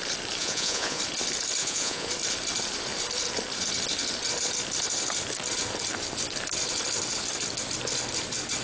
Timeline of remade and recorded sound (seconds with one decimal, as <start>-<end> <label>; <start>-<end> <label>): 0.0-0.4 recorded; 0.4-1.0 remade; 1.0-1.6 recorded; 1.6-2.1 remade; 2.1-8.6 recorded